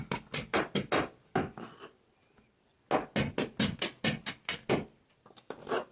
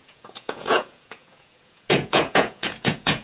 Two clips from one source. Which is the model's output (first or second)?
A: second